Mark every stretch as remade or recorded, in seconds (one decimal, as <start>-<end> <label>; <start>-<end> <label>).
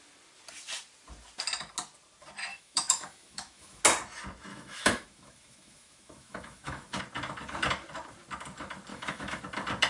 0.0-2.5 recorded; 2.5-3.8 remade; 3.8-4.5 recorded; 4.5-7.0 remade; 7.0-8.9 recorded; 8.9-9.4 remade; 9.4-9.9 recorded